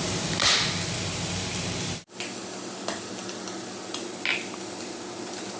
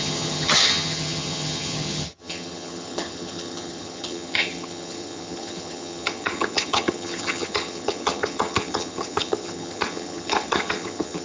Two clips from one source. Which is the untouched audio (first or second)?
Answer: first